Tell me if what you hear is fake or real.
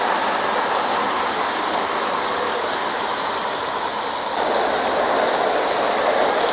real